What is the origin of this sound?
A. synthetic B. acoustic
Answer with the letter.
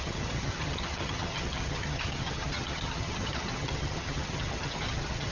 A